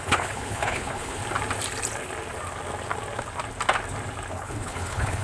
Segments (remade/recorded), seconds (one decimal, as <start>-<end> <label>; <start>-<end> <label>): 0.0-1.2 remade; 1.2-4.3 recorded; 4.3-5.2 remade